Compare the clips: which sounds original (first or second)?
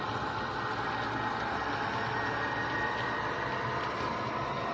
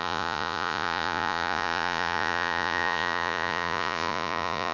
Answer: first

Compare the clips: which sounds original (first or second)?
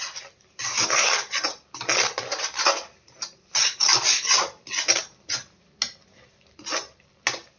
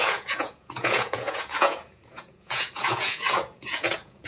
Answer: first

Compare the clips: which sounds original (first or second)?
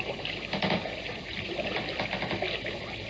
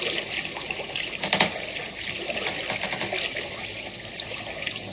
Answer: second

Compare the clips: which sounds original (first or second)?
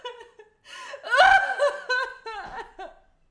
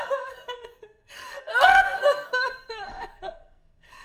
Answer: first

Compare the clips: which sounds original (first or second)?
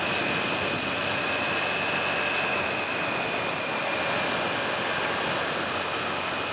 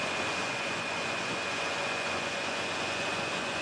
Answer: first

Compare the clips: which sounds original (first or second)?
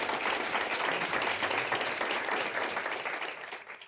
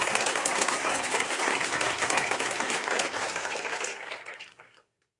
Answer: first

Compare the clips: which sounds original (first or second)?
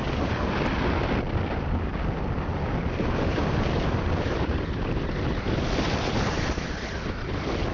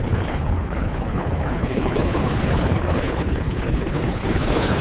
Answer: first